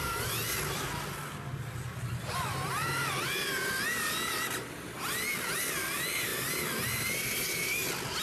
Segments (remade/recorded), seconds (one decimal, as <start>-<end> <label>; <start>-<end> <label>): 0.0-8.2 recorded